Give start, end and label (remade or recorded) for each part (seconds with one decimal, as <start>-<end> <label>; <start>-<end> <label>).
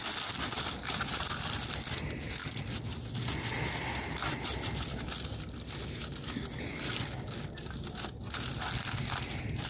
0.0-9.7 recorded